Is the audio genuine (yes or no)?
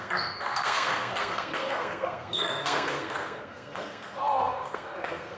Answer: no